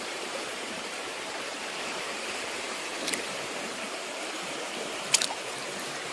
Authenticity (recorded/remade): remade